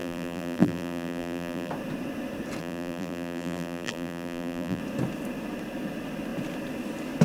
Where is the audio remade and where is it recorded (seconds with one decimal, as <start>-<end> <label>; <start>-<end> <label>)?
0.0-1.7 remade; 1.7-2.6 recorded; 2.6-4.8 remade; 4.8-7.2 recorded